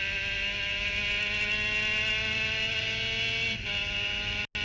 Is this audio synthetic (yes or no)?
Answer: no